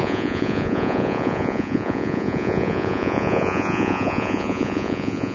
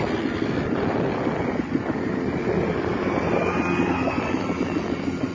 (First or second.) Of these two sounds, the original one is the second